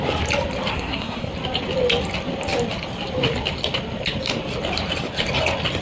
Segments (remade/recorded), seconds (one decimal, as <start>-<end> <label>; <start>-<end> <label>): 0.0-0.7 recorded; 0.7-1.3 remade; 1.3-5.8 recorded